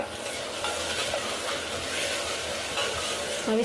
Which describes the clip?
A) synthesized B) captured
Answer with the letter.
B